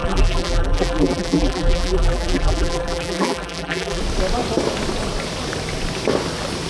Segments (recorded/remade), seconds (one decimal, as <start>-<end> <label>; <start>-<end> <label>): 0.0-4.0 remade; 4.0-6.7 recorded